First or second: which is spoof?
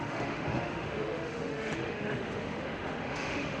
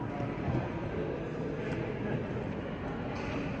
first